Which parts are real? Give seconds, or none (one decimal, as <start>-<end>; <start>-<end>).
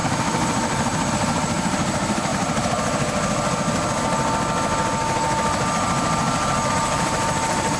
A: 0.0-1.1; 2.3-6.7